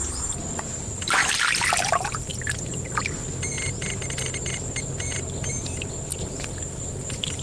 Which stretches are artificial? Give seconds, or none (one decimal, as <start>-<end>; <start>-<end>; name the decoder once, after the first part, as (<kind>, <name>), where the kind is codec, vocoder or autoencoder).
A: 0.0-1.2 (vocoder, BigVGAN v2); 1.8-2.3; 3.5-7.4

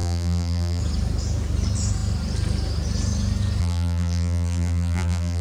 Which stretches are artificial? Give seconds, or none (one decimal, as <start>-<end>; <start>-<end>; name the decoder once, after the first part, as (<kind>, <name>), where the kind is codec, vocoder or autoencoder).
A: 0.0-0.8 (vocoder, BigVGAN v2); 3.6-5.4